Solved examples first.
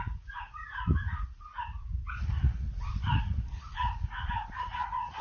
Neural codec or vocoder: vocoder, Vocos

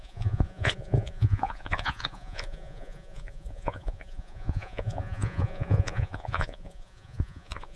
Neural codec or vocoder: vocoder, Vocos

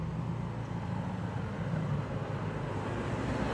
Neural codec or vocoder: none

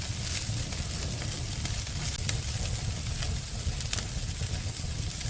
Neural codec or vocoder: none